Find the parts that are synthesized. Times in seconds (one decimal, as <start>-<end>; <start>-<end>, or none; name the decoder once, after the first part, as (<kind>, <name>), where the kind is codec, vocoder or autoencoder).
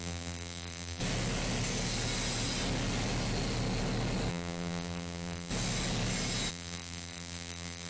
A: 0.0-1.0 (vocoder, BigVGAN v2); 4.3-5.5; 6.5-7.9